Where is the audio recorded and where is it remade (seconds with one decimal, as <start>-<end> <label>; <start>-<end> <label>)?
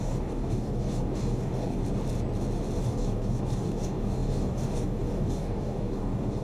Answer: 0.0-1.8 remade; 1.8-2.8 recorded; 2.8-6.4 remade